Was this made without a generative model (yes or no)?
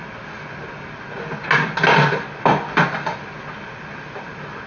yes